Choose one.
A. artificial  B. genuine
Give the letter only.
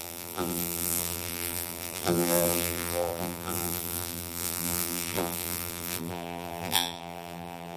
A